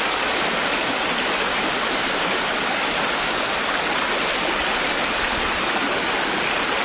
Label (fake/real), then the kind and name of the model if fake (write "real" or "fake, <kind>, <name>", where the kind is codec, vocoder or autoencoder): real